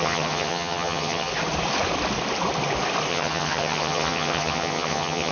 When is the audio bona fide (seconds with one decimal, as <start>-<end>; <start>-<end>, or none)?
1.3-3.1